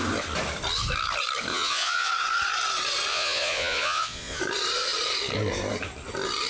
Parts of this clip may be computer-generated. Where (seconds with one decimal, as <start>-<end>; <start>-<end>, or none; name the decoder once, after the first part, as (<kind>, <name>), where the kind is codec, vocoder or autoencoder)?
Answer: 1.5-2.1 (vocoder, Vocos); 3.1-4.4